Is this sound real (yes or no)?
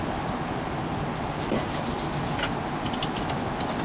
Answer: yes